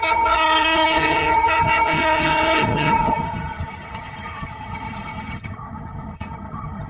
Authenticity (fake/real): fake